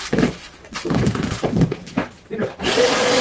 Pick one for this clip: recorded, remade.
remade